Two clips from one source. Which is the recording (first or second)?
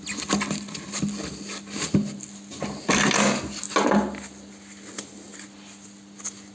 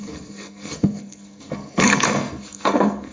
first